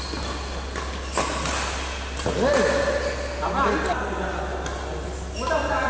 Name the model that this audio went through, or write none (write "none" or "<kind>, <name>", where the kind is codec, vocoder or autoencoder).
none